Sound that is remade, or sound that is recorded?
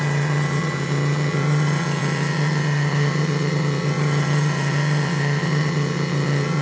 remade